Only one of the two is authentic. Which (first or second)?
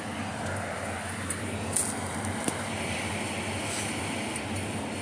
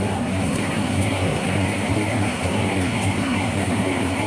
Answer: first